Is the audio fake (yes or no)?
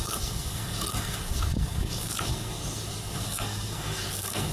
yes